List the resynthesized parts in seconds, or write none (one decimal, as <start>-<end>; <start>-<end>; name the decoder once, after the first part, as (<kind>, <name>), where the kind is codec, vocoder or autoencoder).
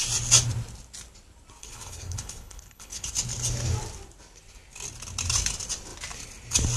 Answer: 1.6-3.1 (codec, HILCodec)